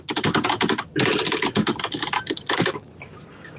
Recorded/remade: recorded